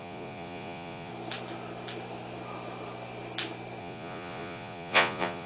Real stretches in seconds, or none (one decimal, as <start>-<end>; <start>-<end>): 1.1-3.8